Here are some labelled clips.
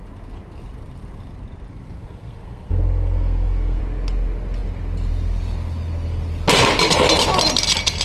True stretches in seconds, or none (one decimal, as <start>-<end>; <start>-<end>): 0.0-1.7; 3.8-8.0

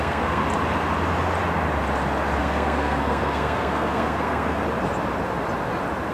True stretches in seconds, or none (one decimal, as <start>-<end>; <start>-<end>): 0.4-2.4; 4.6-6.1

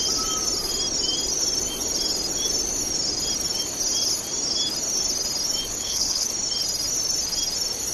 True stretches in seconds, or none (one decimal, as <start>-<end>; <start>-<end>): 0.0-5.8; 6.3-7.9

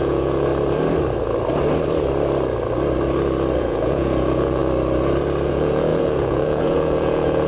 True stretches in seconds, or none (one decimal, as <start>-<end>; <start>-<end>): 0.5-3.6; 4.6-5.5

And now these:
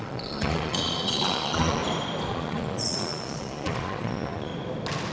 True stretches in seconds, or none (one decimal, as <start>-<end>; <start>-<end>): 1.8-2.3; 4.5-5.1

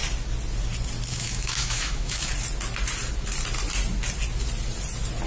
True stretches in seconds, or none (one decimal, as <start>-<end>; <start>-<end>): 0.0-1.1; 2.3-5.3